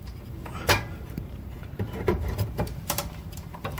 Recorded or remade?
remade